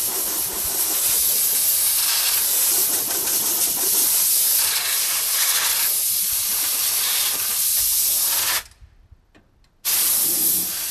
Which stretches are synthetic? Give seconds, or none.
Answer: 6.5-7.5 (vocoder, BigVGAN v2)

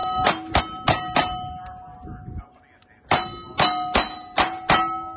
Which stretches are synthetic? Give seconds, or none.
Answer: none

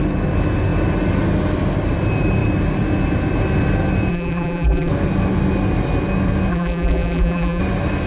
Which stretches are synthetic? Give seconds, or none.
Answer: 4.1-4.9 (vocoder, BigVGAN v2); 6.5-7.6

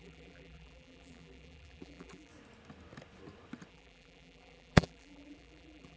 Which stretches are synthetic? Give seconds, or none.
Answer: 0.0-2.3 (vocoder, BigVGAN v2); 3.7-6.0

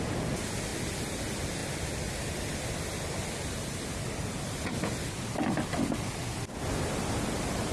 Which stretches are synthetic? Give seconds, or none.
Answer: none

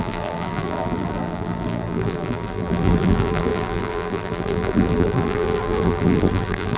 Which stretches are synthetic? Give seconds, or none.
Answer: 0.0-6.8 (vocoder, BigVGAN v2)

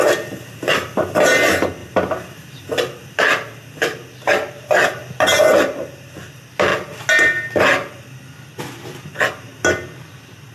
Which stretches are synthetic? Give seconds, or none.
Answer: 1.8-2.6 (vocoder, BigVGAN v2)

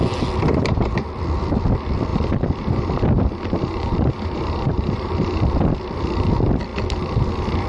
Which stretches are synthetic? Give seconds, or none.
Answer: 0.5-1.0 (vocoder, BigVGAN v2); 2.1-5.6